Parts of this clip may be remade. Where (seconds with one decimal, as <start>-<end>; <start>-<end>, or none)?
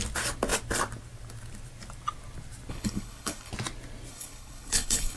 2.7-3.5; 4.1-5.2